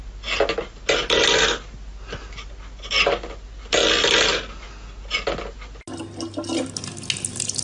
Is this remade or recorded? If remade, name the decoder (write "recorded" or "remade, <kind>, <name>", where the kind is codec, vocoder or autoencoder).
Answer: recorded